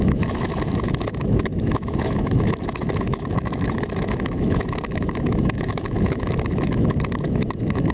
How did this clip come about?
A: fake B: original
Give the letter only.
A